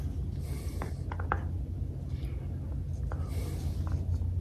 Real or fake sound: real